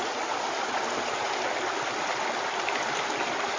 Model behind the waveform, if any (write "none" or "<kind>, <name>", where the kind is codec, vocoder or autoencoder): none